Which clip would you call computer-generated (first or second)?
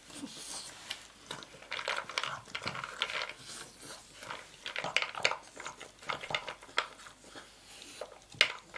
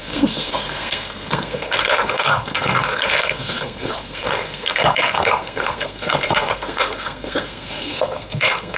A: second